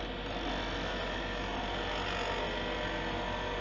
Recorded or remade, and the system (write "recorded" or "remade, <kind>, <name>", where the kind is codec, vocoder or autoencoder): recorded